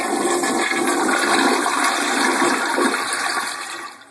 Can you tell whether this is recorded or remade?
recorded